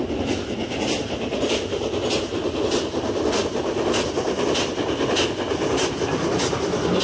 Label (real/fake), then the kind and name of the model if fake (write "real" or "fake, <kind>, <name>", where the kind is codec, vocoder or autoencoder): real